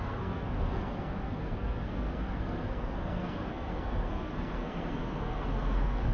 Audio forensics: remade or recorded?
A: remade